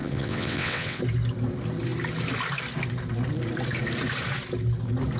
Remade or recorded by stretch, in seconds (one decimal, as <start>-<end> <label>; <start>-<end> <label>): 0.0-1.0 remade; 1.0-5.2 recorded